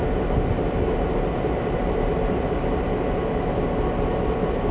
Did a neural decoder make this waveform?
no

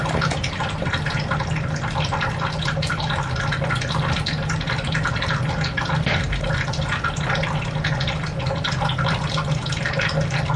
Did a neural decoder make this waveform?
no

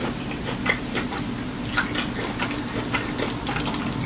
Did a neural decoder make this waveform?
no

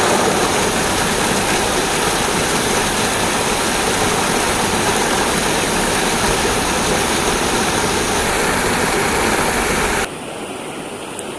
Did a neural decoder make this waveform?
no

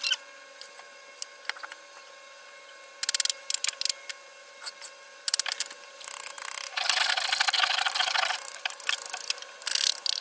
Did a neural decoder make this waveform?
no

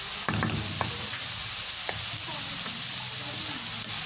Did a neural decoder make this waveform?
no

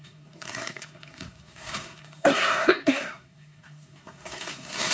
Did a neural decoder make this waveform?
yes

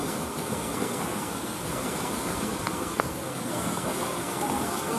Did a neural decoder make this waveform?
yes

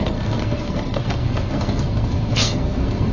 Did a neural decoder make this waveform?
yes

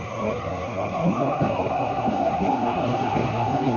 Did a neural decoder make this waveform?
yes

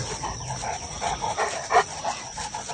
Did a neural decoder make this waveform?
no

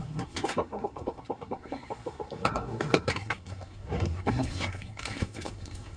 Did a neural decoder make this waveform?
yes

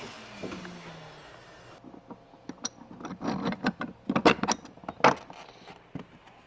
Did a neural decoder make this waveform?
no